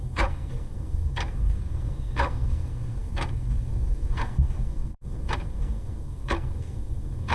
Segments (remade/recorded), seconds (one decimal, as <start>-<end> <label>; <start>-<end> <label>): 0.0-7.3 remade